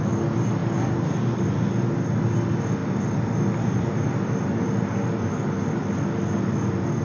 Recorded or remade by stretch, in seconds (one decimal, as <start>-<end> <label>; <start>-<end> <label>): 0.0-7.0 recorded